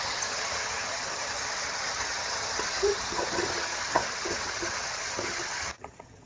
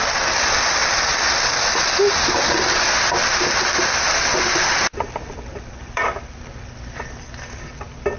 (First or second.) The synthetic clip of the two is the first